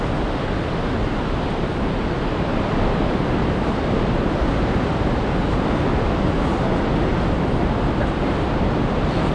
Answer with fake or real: real